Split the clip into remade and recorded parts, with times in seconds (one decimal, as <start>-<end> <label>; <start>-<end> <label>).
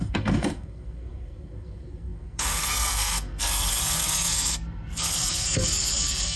0.0-6.4 remade